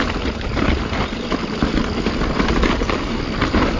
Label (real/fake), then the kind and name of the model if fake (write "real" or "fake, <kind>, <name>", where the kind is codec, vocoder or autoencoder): real